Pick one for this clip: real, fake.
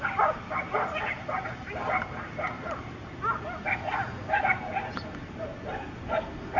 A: real